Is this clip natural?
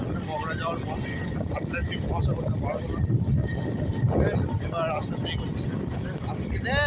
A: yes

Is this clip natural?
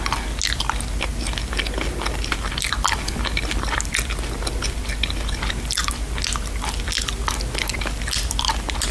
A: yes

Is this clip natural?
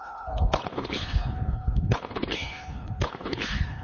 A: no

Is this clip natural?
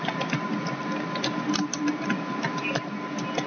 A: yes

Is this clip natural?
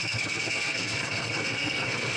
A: no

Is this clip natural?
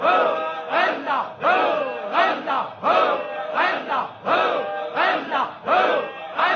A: yes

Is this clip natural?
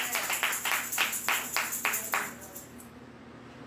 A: yes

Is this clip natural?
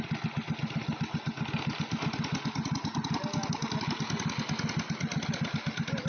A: yes